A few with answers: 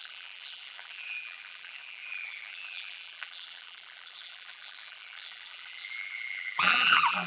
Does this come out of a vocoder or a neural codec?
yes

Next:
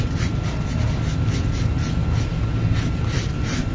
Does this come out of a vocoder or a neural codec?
no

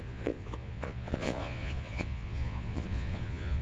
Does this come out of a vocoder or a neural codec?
yes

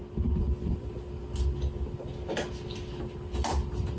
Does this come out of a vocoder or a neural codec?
no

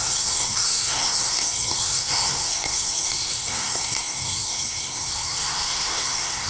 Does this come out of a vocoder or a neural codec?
yes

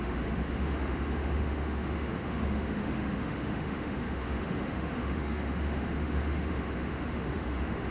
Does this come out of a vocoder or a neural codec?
yes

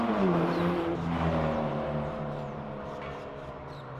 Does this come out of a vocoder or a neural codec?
yes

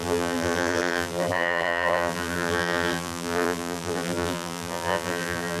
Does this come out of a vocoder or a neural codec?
yes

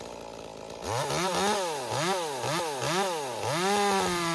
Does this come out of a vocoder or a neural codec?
no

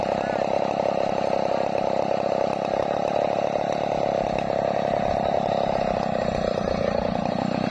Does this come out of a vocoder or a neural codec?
no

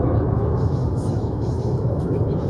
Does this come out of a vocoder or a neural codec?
yes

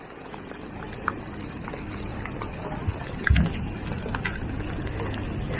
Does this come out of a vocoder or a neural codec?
no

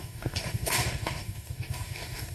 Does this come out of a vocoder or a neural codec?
yes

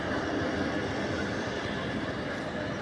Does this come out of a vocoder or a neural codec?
yes